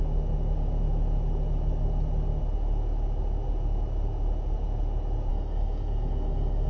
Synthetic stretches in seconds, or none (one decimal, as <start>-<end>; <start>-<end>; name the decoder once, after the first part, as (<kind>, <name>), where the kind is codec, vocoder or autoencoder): 5.3-6.7 (codec, DAC)